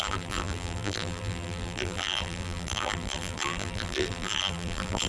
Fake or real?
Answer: fake